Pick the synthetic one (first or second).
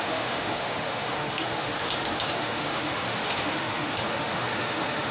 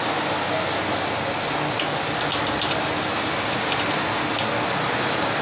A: first